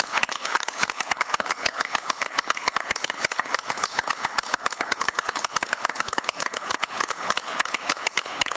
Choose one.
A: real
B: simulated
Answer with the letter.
B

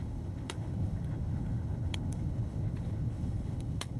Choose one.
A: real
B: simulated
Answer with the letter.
B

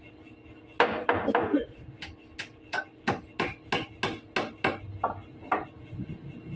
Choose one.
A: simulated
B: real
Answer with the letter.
B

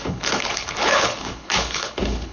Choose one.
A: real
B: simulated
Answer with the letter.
B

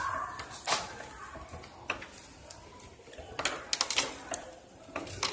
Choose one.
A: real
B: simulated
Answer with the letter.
A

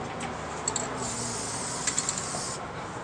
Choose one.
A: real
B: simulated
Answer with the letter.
A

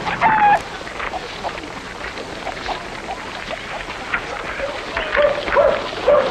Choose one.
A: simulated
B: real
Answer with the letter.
B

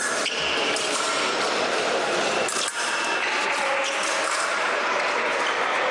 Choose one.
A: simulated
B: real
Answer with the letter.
B